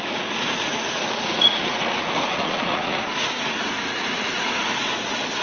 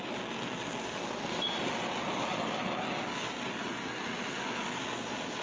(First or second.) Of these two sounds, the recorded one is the second